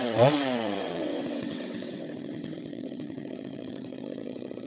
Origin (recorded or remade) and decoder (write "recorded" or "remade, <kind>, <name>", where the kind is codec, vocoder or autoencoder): remade, vocoder, WaveNeXt